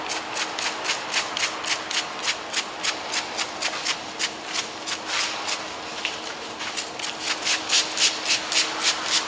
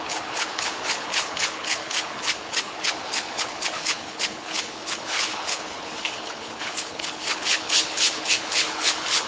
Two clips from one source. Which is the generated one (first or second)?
second